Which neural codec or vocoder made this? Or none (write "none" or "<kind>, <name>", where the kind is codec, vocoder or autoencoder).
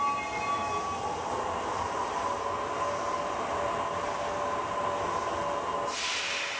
none